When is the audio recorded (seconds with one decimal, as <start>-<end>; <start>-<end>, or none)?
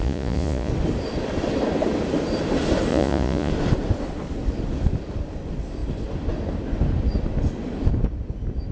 0.7-2.9; 3.5-8.7